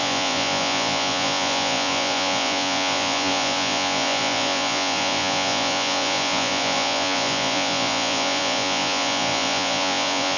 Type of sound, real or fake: fake